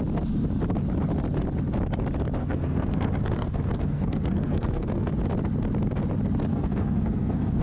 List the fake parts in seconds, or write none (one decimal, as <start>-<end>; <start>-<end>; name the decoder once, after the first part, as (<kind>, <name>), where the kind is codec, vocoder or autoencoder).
2.4-5.1 (codec, SNAC); 6.5-7.6